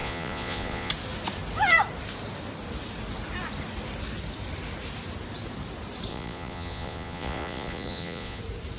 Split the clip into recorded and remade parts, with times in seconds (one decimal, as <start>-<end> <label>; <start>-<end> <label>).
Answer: 0.0-0.9 remade; 0.9-6.1 recorded; 6.1-8.4 remade; 8.4-8.8 recorded